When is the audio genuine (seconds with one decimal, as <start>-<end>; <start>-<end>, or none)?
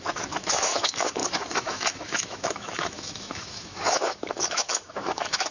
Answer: none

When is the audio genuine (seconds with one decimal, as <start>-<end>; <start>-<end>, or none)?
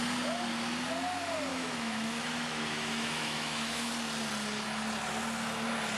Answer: 0.0-1.5; 3.9-6.0